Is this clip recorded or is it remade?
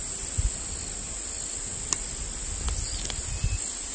recorded